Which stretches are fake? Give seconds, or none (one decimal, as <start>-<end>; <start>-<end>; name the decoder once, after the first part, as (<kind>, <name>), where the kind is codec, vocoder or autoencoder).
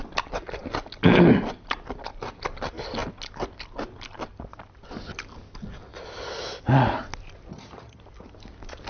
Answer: 7.5-8.0 (vocoder, HiFi-GAN)